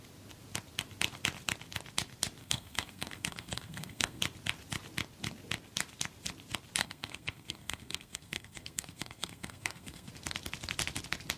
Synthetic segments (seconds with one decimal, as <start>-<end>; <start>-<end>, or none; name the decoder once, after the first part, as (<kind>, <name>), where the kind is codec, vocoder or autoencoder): 2.4-4.2 (codec, SNAC); 6.8-10.1

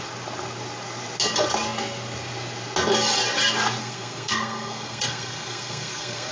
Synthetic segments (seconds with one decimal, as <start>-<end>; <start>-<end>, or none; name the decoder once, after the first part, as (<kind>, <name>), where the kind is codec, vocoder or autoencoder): 3.8-6.3 (codec, SNAC)

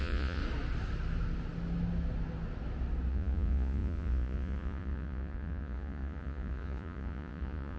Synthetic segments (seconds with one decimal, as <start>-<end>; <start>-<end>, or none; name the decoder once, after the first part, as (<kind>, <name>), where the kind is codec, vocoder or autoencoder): 0.0-0.4 (vocoder, Vocos); 3.1-7.8

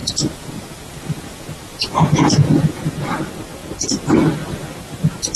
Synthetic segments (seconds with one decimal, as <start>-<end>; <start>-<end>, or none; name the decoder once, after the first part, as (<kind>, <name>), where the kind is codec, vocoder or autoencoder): 0.0-3.2 (vocoder, Vocos)